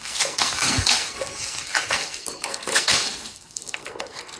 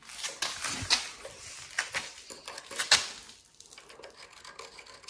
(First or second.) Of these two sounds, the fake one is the first